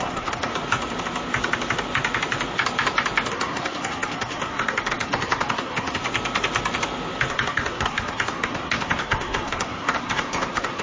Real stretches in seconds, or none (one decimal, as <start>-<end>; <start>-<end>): 0.5-3.3; 6.0-7.3

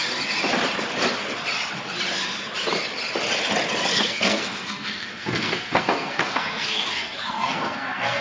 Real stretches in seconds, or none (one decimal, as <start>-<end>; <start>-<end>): 0.0-3.9

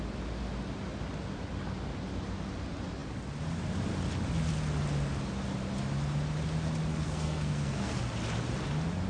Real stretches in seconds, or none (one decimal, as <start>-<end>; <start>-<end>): 0.0-6.9; 8.0-9.1

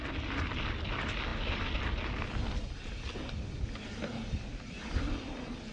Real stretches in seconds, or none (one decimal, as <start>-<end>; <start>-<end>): 0.0-5.7

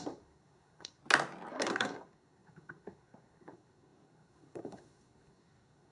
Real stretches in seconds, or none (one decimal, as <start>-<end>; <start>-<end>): 1.0-1.5

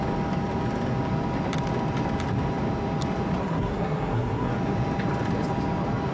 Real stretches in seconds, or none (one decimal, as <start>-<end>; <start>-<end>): 0.0-3.4; 4.5-6.1

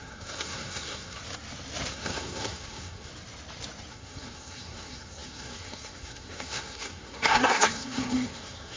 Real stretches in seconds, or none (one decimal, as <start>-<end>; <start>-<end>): 1.2-1.9; 3.1-3.9

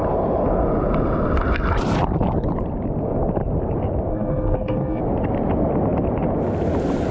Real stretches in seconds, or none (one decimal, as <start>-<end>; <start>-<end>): 0.0-4.1; 5.0-7.1